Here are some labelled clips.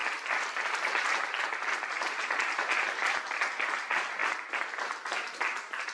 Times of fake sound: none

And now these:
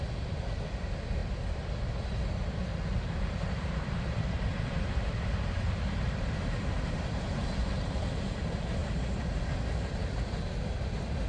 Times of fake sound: 2.9-8.1 (vocoder, BigVGAN v2)

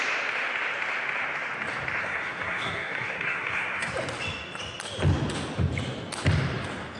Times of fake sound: 2.0-3.9 (codec, SNAC)